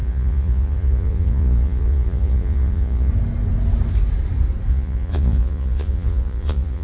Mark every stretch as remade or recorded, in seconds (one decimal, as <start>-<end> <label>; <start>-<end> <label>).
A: 0.0-3.1 remade; 3.1-4.7 recorded; 4.7-6.8 remade